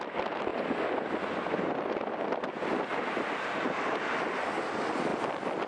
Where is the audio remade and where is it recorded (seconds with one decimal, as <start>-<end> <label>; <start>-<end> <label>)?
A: 0.0-5.7 recorded

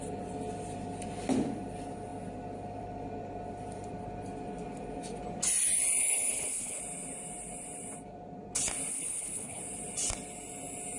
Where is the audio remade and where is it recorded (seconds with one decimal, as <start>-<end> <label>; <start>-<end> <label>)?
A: 0.0-6.0 recorded; 6.0-6.8 remade; 6.8-8.9 recorded; 8.9-9.6 remade; 9.6-11.0 recorded

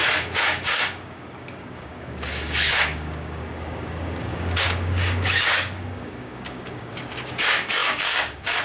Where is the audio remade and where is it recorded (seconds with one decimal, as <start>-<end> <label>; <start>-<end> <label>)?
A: 0.0-8.6 remade

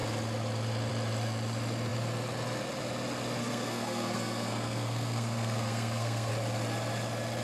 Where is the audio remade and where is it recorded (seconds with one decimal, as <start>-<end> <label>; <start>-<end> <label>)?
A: 0.0-3.4 recorded; 3.4-6.3 remade; 6.3-7.4 recorded

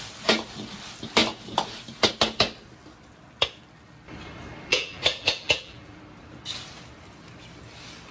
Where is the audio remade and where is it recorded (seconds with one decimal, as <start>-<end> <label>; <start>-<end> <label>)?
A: 0.0-4.7 recorded; 4.7-6.0 remade; 6.0-8.1 recorded